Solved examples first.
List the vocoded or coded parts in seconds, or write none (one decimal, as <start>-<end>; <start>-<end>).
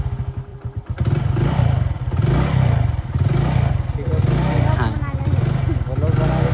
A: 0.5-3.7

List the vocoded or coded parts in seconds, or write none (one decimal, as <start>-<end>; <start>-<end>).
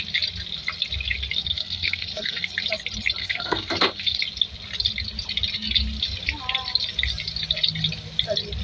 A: 1.4-2.5; 3.2-4.2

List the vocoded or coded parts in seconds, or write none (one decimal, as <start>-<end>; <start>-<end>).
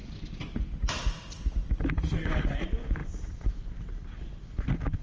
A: 2.4-3.0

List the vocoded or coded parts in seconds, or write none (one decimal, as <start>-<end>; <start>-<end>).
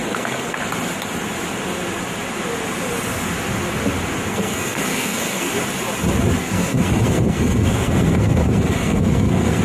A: 0.0-0.6; 4.3-5.5; 6.4-9.6